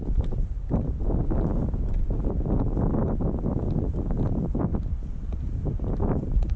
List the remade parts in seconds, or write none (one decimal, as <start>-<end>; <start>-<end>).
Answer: 6.0-6.6